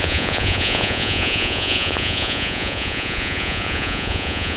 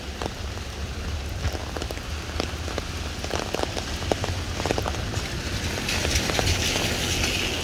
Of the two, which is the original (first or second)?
second